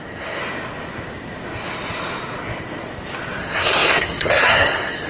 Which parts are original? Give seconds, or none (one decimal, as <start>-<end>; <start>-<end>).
0.4-3.4